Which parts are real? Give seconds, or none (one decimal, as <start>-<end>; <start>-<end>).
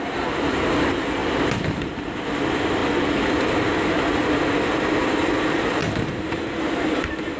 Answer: 0.0-1.2; 1.8-5.8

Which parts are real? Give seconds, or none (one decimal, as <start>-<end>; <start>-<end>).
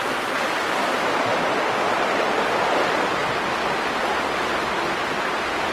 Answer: 0.0-0.8; 1.6-5.7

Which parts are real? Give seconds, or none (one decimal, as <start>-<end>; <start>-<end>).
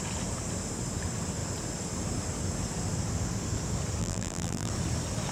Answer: 0.0-4.0; 4.7-5.3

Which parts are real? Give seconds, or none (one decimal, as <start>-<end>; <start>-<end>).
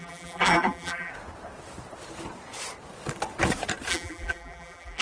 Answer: 1.1-3.9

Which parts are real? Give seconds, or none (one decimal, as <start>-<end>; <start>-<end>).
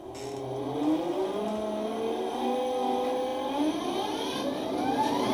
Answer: 0.0-5.3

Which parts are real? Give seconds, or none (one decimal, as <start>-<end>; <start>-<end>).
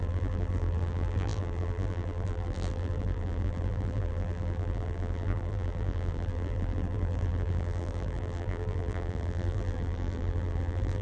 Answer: none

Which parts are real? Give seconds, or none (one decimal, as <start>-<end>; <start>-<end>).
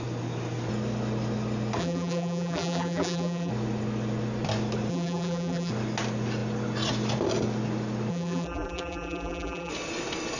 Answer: 0.0-1.8; 3.5-4.9; 5.7-8.1; 9.7-10.4